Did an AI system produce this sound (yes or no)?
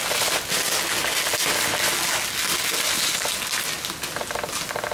no